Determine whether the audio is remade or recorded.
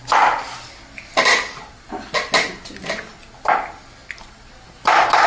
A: recorded